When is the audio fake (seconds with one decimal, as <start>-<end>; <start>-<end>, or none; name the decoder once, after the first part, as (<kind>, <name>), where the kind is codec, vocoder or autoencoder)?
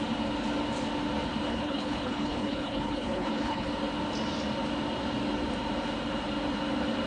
1.5-3.7 (codec, HILCodec)